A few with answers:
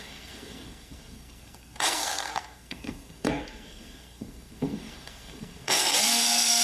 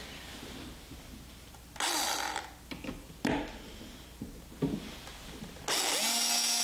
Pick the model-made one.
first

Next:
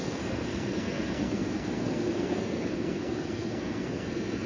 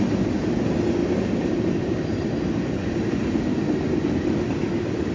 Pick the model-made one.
first